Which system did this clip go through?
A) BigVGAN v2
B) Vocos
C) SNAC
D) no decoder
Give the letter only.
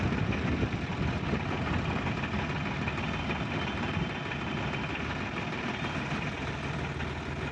D